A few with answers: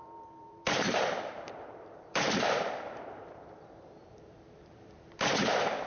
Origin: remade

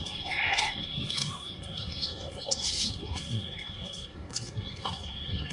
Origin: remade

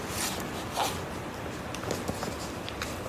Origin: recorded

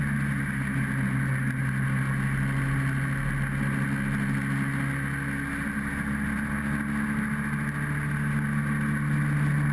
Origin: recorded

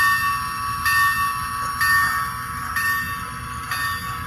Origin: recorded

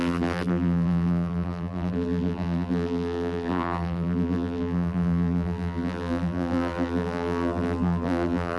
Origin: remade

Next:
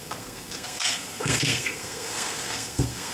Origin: remade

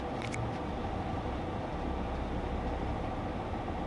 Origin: recorded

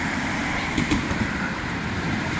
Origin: remade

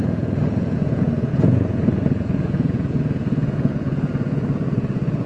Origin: remade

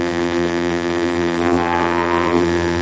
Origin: remade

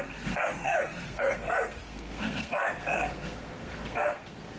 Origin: remade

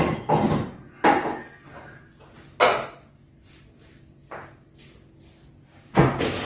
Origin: recorded